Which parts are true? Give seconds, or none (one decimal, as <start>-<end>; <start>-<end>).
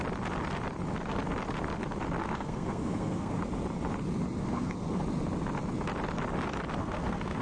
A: 0.0-2.2; 3.4-4.4; 5.0-6.8